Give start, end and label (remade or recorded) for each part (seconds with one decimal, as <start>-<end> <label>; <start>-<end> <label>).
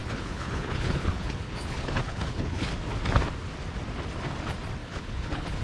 0.0-2.7 remade; 2.7-4.8 recorded; 4.8-5.6 remade